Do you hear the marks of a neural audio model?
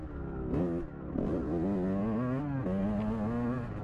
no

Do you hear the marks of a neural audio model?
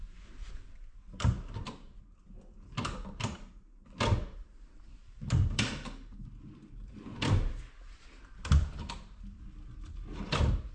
yes